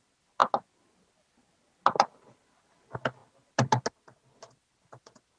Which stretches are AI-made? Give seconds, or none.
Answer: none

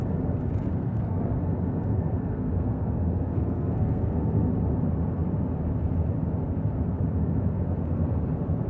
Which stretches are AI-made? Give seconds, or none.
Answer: 0.7-1.4 (codec, SNAC); 1.9-4.5; 7.1-7.6

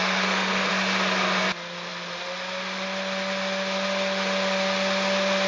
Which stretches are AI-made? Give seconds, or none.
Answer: 0.0-0.7 (codec, SNAC)

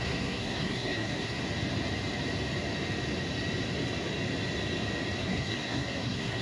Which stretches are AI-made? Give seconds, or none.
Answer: 0.0-1.4 (codec, SNAC); 5.2-6.4

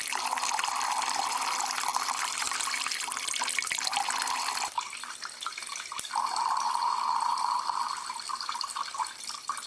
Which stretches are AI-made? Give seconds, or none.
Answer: none

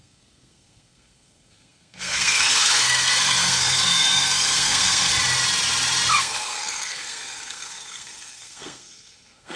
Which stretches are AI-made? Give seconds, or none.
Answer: 0.0-5.1 (codec, SNAC); 6.2-9.6